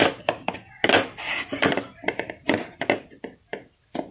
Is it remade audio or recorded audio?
recorded